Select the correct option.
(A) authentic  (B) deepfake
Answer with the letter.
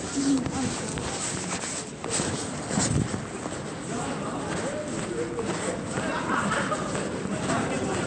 A